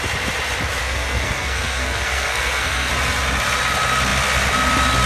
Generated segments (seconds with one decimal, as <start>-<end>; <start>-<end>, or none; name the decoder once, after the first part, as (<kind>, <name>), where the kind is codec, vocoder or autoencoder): 0.8-2.9 (codec, SNAC)